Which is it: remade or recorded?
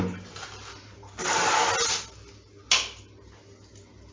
recorded